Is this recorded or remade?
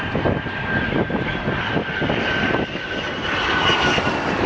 recorded